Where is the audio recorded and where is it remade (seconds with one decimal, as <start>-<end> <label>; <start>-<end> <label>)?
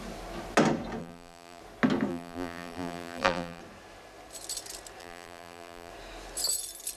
0.0-1.0 recorded; 1.0-1.6 remade; 1.6-2.1 recorded; 2.1-3.6 remade; 3.6-5.0 recorded; 5.0-5.9 remade; 5.9-7.0 recorded